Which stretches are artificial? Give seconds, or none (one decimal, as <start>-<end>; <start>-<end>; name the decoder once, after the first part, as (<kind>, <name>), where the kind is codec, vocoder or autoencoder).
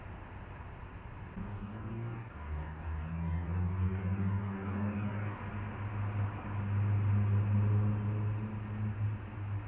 1.4-5.4 (codec, DAC)